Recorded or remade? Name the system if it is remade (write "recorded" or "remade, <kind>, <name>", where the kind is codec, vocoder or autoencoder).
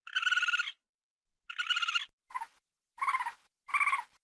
recorded